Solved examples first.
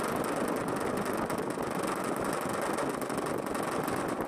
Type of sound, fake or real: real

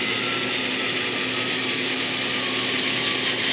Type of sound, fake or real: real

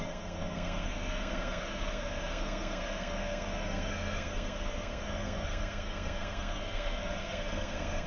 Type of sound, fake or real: fake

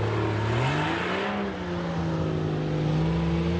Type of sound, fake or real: real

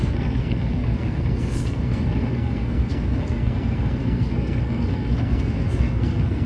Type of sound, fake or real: fake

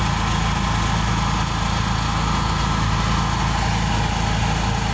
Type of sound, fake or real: real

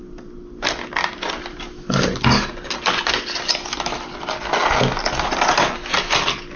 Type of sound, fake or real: real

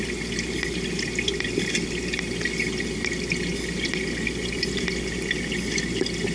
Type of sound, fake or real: real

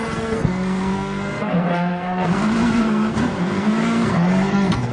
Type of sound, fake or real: fake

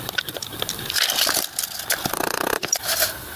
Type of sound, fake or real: real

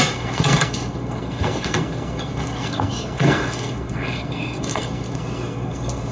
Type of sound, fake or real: fake